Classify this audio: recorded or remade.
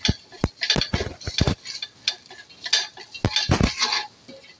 recorded